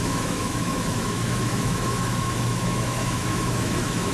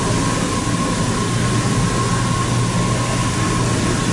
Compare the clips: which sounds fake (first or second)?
first